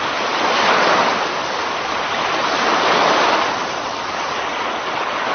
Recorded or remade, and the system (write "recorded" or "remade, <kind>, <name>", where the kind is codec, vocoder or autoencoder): recorded